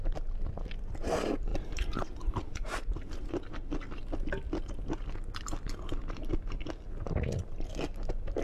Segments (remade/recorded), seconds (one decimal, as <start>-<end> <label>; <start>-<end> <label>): 0.0-1.5 recorded; 1.5-3.0 remade; 3.0-6.0 recorded; 6.0-6.8 remade; 6.8-8.4 recorded